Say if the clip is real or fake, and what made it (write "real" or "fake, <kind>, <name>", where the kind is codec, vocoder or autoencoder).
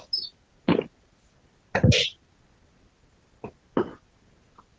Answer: real